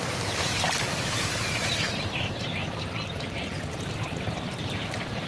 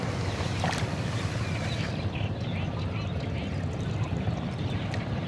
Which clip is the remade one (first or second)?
first